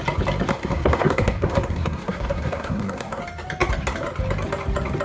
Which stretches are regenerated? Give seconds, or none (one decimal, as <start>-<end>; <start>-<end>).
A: 0.5-3.2